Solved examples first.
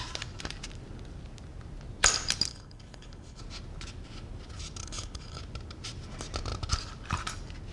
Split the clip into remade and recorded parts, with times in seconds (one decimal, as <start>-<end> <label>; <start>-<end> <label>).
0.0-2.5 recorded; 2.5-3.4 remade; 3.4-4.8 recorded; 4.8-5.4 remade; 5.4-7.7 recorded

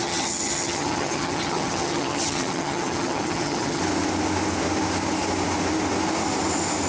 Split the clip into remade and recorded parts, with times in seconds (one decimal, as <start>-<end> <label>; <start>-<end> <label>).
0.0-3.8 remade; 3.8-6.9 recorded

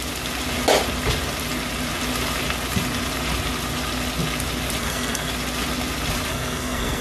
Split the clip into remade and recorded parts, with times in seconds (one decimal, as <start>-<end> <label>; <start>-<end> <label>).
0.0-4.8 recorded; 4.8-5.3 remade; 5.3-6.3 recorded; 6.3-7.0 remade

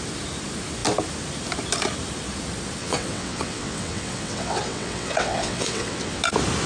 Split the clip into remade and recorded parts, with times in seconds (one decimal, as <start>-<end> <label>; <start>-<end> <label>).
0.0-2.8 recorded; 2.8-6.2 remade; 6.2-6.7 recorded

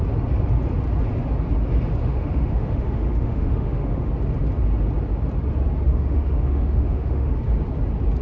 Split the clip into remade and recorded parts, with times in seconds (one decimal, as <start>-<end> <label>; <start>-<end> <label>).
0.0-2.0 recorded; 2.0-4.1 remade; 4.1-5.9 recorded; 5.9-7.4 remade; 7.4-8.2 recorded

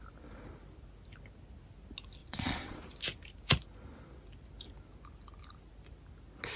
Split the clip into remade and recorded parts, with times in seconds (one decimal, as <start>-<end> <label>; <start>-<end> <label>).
0.0-2.2 recorded; 2.2-2.8 remade; 2.8-6.6 recorded

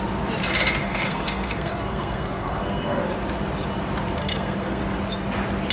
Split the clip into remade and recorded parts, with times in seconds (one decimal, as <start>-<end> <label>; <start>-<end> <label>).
0.0-0.8 recorded; 0.8-3.1 remade; 3.1-4.2 recorded; 4.2-4.8 remade; 4.8-5.7 recorded